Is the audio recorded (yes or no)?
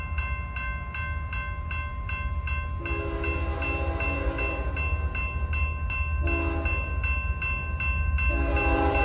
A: yes